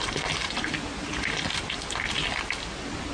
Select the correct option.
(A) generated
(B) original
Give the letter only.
B